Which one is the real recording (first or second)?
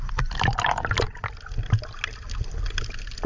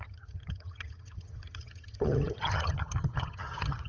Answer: first